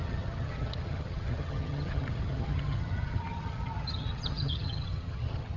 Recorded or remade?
remade